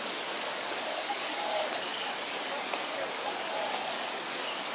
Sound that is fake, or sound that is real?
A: fake